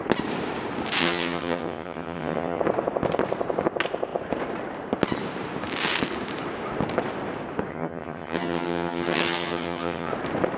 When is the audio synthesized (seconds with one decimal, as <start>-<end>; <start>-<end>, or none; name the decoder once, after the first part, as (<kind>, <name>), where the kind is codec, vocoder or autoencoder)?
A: 1.0-2.6 (vocoder, HiFi-GAN); 7.7-10.1